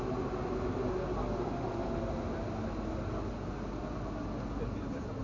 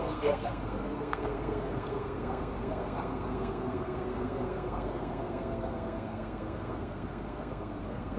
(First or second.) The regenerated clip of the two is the second